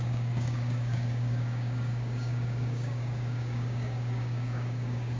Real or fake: fake